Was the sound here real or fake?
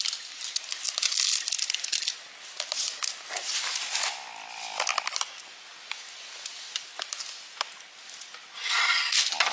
real